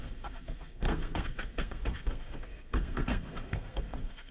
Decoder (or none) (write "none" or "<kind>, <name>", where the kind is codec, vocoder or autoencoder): codec, SNAC